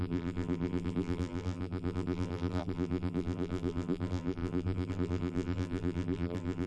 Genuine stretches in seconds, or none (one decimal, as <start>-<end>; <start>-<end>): none